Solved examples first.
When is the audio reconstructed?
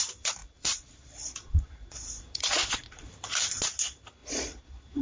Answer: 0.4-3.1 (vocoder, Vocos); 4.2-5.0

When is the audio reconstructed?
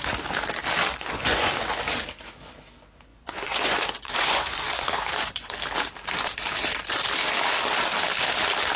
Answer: 0.9-1.5 (vocoder, Vocos); 3.1-5.6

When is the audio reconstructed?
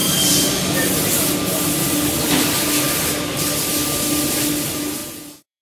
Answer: 5.0-5.6 (vocoder, Vocos)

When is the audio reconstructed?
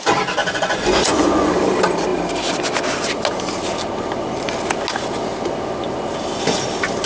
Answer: 0.4-1.5 (vocoder, Vocos)